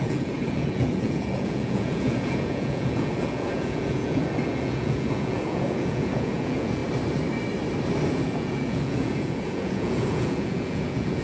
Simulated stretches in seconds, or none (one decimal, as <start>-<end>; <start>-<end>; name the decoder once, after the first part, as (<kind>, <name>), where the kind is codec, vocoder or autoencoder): 0.0-6.8 (vocoder, Vocos); 8.1-11.2